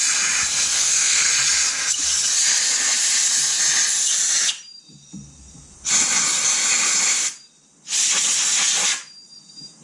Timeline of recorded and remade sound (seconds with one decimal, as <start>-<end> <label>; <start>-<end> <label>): 0.0-0.7 recorded; 0.7-1.3 remade; 1.3-9.8 recorded